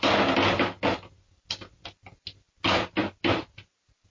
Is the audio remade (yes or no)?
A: no